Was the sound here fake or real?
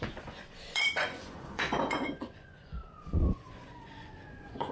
fake